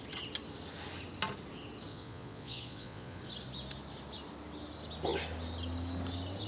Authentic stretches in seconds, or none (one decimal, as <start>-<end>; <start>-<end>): 0.0-1.9; 3.2-6.5